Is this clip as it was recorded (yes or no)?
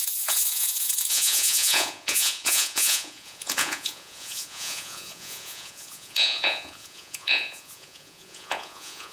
no